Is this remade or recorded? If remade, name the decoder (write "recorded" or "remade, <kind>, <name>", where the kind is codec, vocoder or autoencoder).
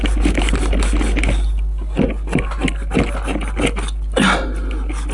recorded